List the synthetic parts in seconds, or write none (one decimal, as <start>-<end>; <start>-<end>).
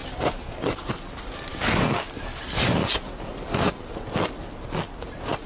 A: none